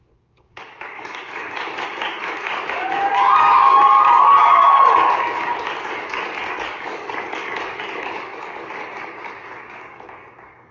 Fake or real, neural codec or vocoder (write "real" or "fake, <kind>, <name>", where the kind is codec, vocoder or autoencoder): fake, codec, DAC